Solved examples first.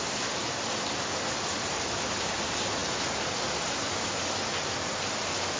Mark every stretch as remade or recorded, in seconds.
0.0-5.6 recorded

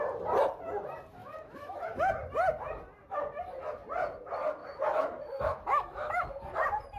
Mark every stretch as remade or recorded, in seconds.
0.0-1.2 recorded; 1.2-2.1 remade; 2.1-4.6 recorded; 4.6-6.3 remade; 6.3-7.0 recorded

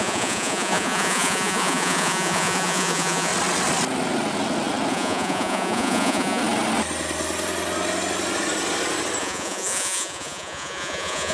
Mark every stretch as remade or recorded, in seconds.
0.0-3.3 remade; 3.3-4.9 recorded; 4.9-6.4 remade; 6.4-9.2 recorded; 9.2-11.3 remade

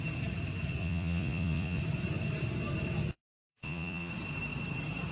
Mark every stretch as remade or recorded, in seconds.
0.0-0.8 recorded; 0.8-1.8 remade; 1.8-3.5 recorded; 3.5-4.1 remade; 4.1-5.1 recorded

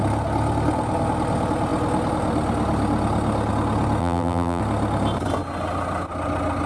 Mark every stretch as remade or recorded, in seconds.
0.0-4.0 recorded; 4.0-4.6 remade; 4.6-6.7 recorded

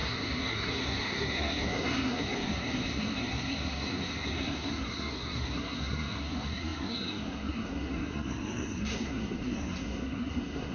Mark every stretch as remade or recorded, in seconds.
0.0-10.7 remade